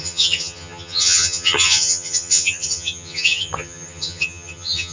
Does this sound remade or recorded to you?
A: remade